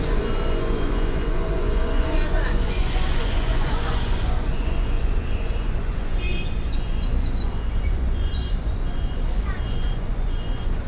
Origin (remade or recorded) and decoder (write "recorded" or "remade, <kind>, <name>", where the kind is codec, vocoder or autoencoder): remade, vocoder, Vocos